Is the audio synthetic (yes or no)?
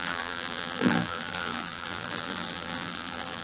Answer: yes